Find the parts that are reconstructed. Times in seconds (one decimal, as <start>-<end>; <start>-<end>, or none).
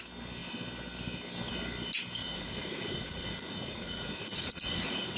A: 2.2-5.2